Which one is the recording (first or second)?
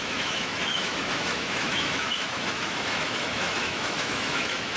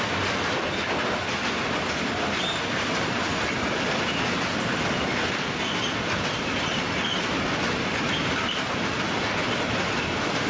second